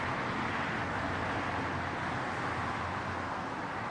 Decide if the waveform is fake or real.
real